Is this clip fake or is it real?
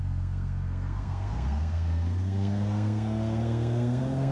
fake